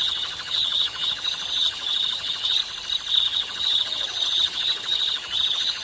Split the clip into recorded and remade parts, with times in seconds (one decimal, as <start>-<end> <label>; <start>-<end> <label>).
0.0-2.6 remade; 2.6-3.2 recorded; 3.2-5.8 remade